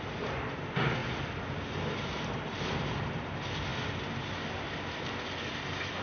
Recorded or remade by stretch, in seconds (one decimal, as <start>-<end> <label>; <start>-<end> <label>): 0.0-6.0 recorded